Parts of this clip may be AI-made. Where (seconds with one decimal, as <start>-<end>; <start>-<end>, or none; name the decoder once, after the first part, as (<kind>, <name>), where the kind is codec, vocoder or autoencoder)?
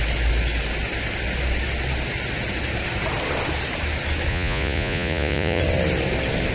4.3-5.6 (vocoder, Vocos)